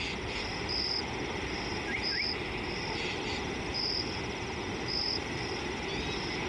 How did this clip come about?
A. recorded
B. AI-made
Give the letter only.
A